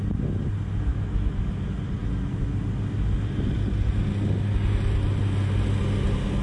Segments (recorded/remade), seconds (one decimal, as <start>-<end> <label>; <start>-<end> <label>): 0.0-0.9 recorded; 0.9-1.5 remade; 1.5-6.4 recorded